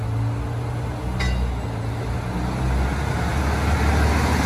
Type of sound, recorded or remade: recorded